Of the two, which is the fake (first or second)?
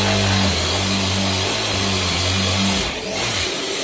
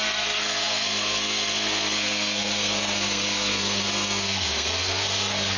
second